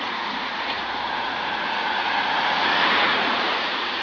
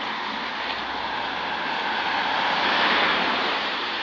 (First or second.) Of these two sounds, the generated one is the first